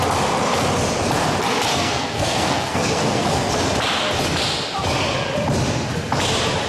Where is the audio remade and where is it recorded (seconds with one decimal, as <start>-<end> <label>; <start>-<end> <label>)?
0.0-1.7 recorded; 1.7-3.5 remade; 3.5-6.7 recorded